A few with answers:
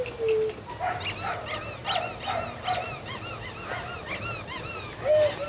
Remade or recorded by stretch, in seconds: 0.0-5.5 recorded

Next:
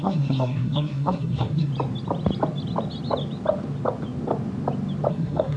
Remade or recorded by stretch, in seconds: 0.0-1.7 remade; 1.7-5.1 recorded; 5.1-5.6 remade

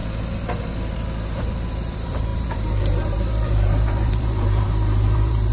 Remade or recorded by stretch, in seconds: 0.0-1.4 recorded; 1.4-5.5 remade

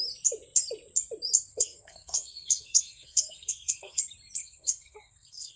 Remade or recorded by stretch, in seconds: 0.0-1.5 recorded; 1.5-4.0 remade; 4.0-4.4 recorded; 4.4-5.6 remade

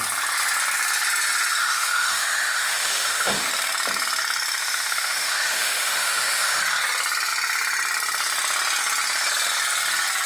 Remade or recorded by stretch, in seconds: 0.0-1.6 recorded; 1.6-3.5 remade; 3.5-4.6 recorded; 4.6-6.6 remade; 6.6-10.3 recorded

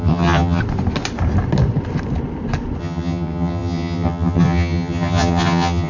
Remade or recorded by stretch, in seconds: 0.0-0.6 remade; 0.6-2.8 recorded; 2.8-5.9 remade